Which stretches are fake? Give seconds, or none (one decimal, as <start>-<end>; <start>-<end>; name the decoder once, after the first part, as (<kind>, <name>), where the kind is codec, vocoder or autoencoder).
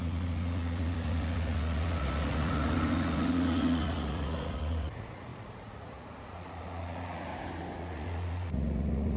0.0-7.3 (vocoder, Vocos); 7.8-9.2